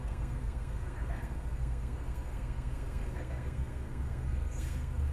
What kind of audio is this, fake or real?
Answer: fake